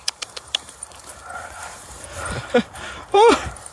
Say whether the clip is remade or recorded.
remade